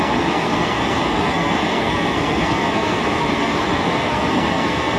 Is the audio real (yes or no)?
no